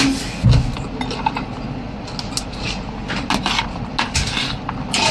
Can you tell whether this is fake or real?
real